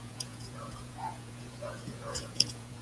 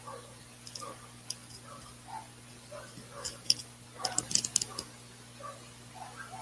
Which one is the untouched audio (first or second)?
second